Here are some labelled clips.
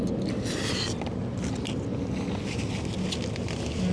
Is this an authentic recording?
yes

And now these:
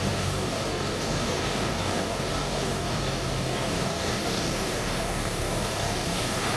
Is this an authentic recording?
no